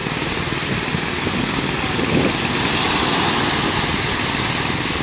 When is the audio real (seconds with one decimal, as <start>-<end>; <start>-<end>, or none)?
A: 0.0-5.0